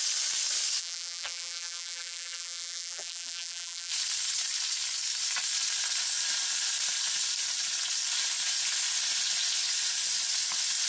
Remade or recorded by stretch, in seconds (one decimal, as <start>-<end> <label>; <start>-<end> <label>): 0.0-0.8 recorded; 0.8-3.9 remade; 3.9-10.9 recorded